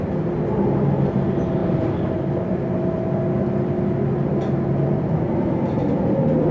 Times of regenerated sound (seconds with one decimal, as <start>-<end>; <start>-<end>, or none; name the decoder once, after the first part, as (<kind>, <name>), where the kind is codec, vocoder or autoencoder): none